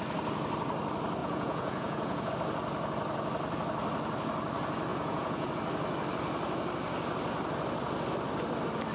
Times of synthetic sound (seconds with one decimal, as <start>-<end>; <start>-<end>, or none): 1.2-2.3; 4.9-5.5